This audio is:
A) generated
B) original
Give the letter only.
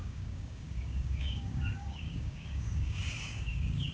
A